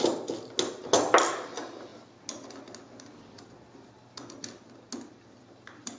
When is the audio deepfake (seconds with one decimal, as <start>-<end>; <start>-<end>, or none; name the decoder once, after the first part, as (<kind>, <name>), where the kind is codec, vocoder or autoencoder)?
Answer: none